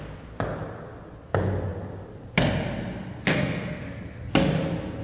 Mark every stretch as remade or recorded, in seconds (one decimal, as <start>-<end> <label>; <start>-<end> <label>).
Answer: 0.0-3.3 recorded; 3.3-3.8 remade; 3.8-5.0 recorded